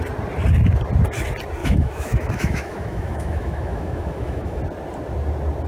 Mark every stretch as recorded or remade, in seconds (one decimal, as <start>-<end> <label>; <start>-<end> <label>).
0.0-1.6 recorded; 1.6-4.6 remade; 4.6-5.7 recorded